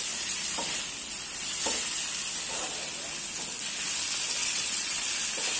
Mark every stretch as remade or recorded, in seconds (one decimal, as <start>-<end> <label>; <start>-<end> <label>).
0.0-4.4 recorded; 4.4-5.1 remade; 5.1-5.6 recorded